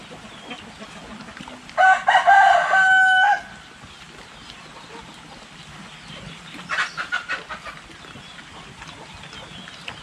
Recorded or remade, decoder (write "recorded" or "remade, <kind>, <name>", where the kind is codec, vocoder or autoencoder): recorded